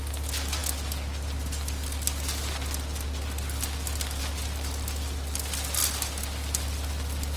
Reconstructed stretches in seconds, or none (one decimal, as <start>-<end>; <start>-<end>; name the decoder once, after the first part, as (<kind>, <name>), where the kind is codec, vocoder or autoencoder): none